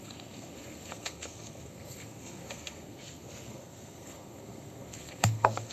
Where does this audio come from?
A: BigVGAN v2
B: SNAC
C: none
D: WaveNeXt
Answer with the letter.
B